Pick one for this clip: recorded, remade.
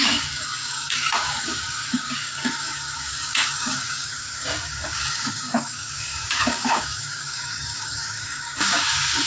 remade